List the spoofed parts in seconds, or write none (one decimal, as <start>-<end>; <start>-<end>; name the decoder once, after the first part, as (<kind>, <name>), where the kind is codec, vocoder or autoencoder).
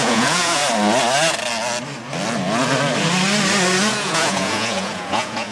0.0-0.6 (vocoder, Vocos); 3.9-5.5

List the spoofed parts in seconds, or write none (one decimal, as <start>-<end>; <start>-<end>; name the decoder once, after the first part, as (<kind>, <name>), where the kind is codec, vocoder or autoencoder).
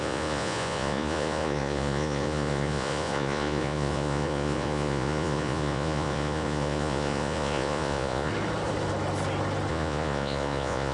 0.0-8.3 (vocoder, Vocos); 9.7-10.9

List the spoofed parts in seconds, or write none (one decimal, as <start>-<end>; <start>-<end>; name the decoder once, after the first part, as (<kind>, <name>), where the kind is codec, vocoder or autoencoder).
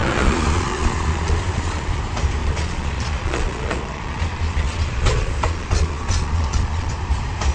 0.0-2.0 (vocoder, Vocos); 2.4-6.9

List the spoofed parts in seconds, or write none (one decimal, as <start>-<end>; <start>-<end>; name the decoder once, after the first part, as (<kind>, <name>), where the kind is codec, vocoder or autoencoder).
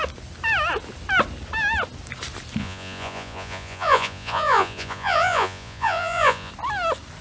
2.6-6.5 (vocoder, Vocos)